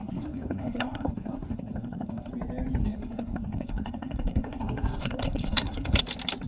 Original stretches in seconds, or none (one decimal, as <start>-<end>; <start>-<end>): 2.3-2.8; 6.0-6.5